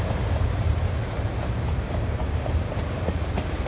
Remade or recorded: recorded